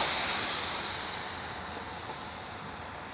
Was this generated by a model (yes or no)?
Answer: no